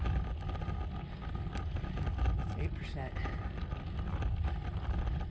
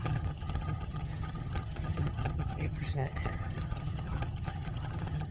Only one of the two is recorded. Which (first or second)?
first